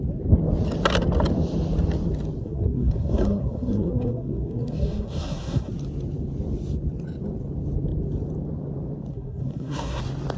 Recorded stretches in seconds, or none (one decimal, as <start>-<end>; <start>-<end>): 0.0-2.4; 5.7-9.1; 10.0-10.4